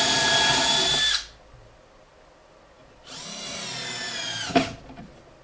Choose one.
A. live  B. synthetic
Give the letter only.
A